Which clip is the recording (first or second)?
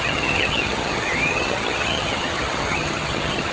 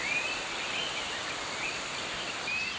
second